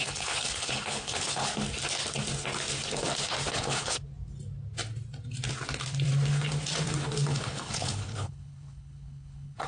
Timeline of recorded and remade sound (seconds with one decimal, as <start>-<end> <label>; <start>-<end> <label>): 0.0-1.5 remade; 1.5-3.5 recorded; 3.5-4.0 remade; 4.0-7.3 recorded; 7.3-9.7 remade